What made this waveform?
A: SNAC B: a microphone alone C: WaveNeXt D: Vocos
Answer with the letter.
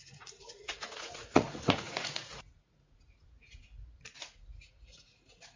D